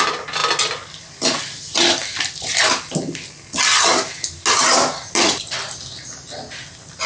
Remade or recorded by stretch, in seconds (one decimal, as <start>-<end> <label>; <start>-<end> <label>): 0.0-7.1 recorded